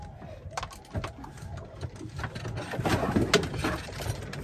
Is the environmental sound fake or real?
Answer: real